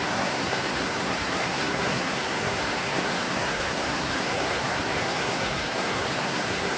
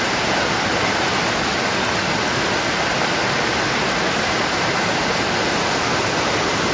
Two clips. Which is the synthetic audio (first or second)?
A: first